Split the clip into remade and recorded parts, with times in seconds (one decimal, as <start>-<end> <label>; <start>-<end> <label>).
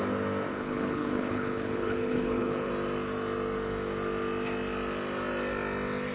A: 0.0-0.5 recorded; 0.5-2.7 remade; 2.7-6.1 recorded